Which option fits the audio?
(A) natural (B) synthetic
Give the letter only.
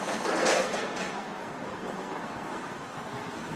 B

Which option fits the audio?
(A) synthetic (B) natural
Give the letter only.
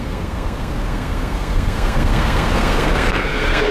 A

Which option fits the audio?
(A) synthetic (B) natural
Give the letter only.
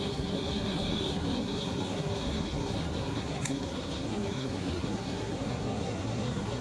A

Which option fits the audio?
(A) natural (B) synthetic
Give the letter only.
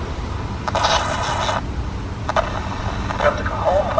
A